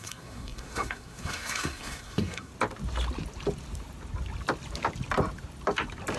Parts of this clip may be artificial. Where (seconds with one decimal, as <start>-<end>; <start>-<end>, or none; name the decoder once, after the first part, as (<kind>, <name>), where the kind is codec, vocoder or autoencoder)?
0.0-2.5 (codec, SNAC)